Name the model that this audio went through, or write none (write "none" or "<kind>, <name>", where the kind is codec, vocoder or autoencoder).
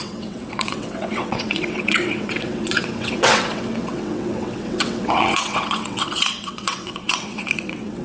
vocoder, WaveNeXt